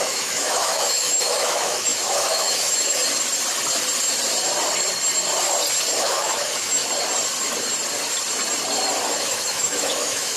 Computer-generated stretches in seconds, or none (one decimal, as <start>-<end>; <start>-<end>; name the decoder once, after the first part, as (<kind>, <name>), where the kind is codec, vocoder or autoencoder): 0.0-3.0 (autoencoder, DAC-VAE); 6.0-6.8; 9.2-10.4